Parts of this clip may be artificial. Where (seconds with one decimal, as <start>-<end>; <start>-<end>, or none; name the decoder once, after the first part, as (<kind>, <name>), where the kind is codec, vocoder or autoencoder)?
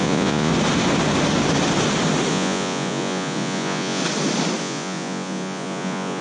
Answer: 0.0-0.5 (vocoder, Vocos); 2.3-4.0; 4.6-6.2